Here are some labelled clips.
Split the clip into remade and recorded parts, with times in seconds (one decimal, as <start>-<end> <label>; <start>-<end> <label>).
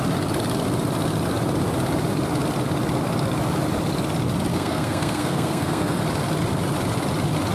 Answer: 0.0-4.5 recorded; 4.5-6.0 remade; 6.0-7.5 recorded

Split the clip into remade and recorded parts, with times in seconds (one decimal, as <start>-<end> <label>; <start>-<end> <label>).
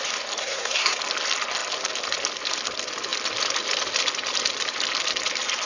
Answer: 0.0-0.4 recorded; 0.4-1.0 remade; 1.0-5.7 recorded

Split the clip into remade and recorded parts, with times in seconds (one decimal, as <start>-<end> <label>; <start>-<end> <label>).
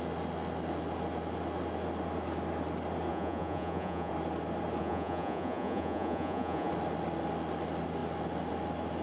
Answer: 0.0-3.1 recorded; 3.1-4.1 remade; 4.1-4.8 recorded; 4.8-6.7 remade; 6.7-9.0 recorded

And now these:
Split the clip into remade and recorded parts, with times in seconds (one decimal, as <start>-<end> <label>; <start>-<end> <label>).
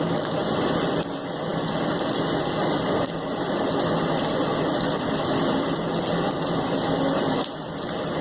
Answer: 0.0-8.2 recorded